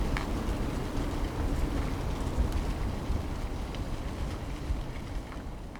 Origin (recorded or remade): recorded